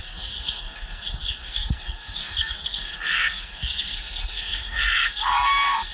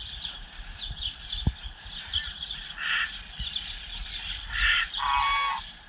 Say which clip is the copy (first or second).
first